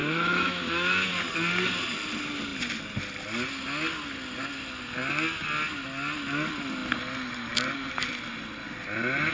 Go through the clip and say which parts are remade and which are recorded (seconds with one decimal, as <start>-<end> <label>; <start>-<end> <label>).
0.0-1.1 remade; 1.1-9.3 recorded